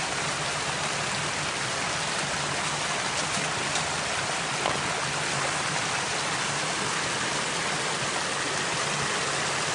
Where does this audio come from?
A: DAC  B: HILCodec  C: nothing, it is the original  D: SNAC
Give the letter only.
C